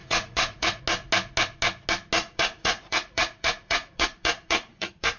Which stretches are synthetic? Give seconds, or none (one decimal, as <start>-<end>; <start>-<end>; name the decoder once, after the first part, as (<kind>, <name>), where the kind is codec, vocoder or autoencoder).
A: 0.0-0.8 (vocoder, Vocos); 2.2-5.2